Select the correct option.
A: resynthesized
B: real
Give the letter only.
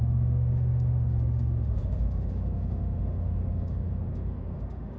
A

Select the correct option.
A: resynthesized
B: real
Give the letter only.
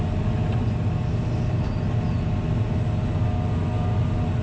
B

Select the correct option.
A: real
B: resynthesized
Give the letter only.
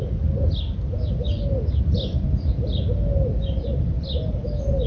A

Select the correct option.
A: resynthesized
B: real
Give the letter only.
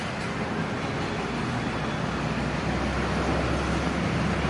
B